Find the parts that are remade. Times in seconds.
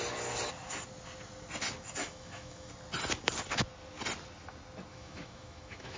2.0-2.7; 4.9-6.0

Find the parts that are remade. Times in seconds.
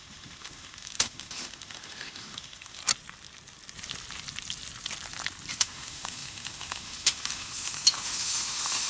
0.0-2.8; 5.5-8.9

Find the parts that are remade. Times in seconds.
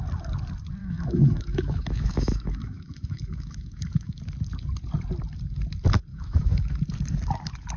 0.8-4.2; 6.1-6.7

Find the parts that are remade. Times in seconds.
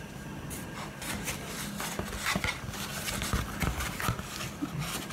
none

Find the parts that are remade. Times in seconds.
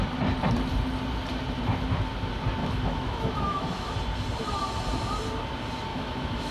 2.6-3.9; 5.9-6.5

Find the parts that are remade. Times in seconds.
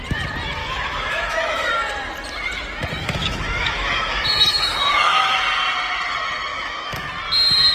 0.6-1.7; 3.0-5.4; 6.5-7.1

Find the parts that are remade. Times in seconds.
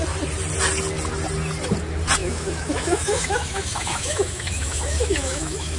2.2-5.8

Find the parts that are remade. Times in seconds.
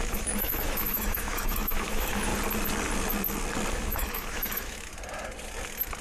0.0-2.3; 3.7-4.9